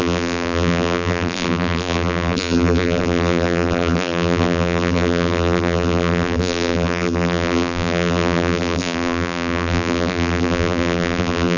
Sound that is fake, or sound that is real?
fake